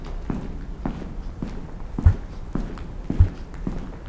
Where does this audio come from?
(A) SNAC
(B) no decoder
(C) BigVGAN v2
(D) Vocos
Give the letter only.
B